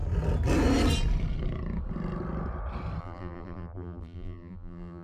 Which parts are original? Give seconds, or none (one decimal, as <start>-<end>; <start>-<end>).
0.0-3.0